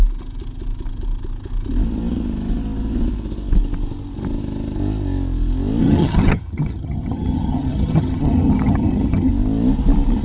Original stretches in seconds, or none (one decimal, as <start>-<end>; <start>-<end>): 0.0-5.8; 9.3-10.2